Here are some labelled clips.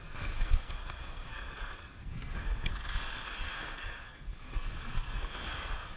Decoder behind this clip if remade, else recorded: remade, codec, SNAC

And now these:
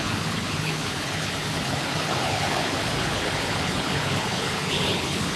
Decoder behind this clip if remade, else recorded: remade, codec, HILCodec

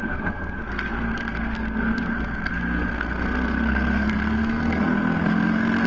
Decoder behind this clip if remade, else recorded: remade, codec, SNAC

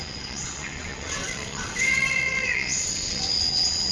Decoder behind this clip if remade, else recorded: remade, vocoder, WaveNeXt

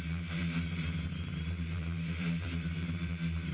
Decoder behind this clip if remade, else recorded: remade, vocoder, BigVGAN v2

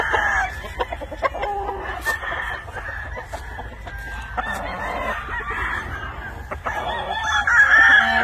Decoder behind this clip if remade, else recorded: recorded